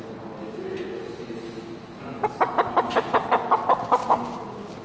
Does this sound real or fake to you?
real